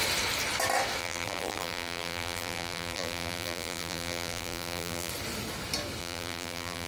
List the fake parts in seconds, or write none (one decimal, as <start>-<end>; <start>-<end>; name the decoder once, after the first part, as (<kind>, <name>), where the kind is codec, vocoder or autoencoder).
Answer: 1.0-5.1 (vocoder, BigVGAN v2); 6.0-6.9